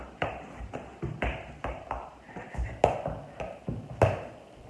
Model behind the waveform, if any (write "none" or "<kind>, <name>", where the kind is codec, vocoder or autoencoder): none